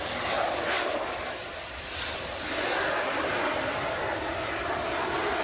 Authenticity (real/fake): real